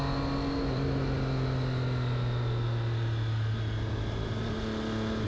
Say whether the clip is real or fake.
real